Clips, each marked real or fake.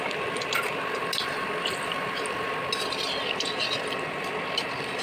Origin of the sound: real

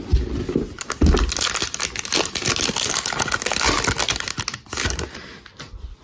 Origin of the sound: real